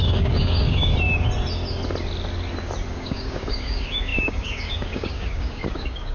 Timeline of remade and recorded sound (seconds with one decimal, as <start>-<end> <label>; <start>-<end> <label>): 0.0-0.9 remade; 0.9-2.9 recorded; 2.9-6.1 remade